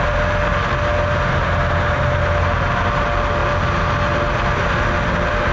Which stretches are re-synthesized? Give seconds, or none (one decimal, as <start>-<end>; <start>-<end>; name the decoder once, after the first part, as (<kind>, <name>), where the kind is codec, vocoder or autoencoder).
none